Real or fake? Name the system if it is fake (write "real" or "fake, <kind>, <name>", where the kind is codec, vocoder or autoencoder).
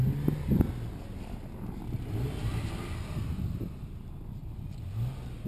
real